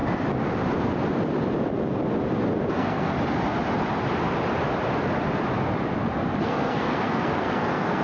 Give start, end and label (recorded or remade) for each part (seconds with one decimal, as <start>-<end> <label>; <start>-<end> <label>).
0.0-2.7 recorded; 2.7-3.1 remade; 3.1-6.4 recorded; 6.4-8.0 remade